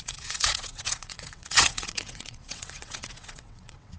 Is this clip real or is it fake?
fake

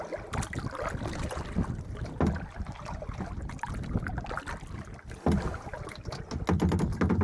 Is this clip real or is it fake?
real